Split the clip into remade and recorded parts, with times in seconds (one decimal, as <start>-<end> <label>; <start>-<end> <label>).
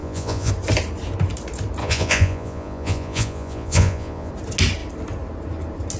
0.0-0.5 remade; 0.5-1.8 recorded; 1.8-4.3 remade; 4.3-6.0 recorded